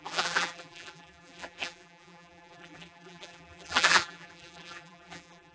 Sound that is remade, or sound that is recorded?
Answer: remade